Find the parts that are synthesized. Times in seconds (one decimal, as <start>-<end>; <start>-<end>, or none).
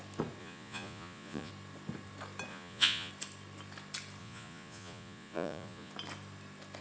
0.4-1.5; 2.5-3.1; 4.2-5.9